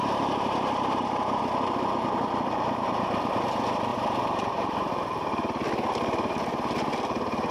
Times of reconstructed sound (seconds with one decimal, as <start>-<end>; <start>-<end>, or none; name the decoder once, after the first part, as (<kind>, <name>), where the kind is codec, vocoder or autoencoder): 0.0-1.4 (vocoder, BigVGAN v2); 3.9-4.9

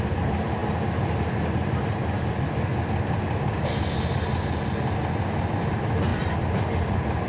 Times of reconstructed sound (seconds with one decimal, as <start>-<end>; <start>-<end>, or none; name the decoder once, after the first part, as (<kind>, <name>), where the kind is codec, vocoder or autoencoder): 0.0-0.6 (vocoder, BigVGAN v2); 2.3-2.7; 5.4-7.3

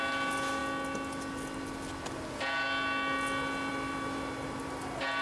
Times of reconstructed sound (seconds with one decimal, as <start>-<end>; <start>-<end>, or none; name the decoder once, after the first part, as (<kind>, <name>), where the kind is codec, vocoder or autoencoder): none

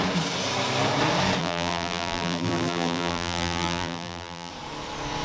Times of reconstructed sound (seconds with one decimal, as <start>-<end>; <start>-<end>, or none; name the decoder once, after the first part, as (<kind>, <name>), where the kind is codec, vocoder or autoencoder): 1.4-4.5 (vocoder, BigVGAN v2)